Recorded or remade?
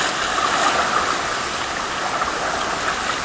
recorded